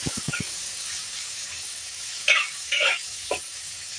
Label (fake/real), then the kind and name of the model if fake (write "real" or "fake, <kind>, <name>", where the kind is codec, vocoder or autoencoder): fake, codec, DAC